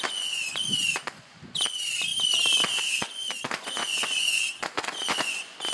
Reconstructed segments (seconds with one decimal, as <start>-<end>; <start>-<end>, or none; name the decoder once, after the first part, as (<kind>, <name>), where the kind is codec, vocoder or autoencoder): 0.0-2.1 (vocoder, Vocos); 2.9-5.7

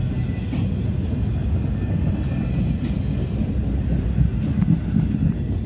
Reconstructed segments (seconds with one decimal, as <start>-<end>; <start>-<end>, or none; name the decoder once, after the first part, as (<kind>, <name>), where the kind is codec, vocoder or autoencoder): none

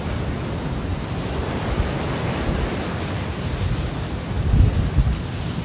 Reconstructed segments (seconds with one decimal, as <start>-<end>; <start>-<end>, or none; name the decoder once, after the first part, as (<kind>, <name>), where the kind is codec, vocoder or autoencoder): none

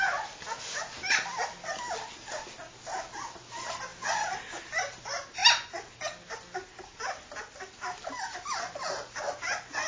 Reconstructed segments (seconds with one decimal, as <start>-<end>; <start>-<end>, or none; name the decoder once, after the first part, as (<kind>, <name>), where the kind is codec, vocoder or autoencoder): none

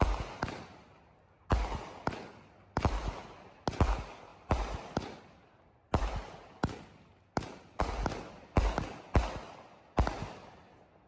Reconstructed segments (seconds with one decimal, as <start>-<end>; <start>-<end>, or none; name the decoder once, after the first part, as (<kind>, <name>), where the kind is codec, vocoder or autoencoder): none

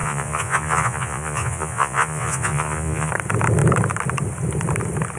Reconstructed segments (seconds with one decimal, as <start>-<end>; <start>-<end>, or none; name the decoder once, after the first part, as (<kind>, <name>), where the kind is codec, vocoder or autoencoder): 0.0-3.1 (vocoder, Vocos)